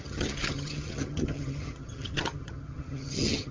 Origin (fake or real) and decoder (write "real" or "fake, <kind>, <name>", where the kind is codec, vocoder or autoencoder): fake, vocoder, HiFi-GAN